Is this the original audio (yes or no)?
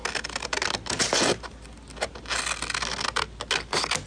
yes